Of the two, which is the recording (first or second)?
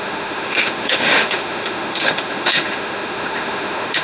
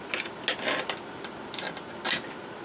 second